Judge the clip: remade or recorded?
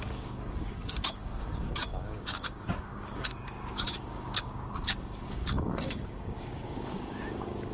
remade